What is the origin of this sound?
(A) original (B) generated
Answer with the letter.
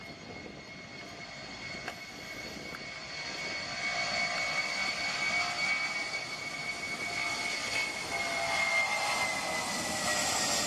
A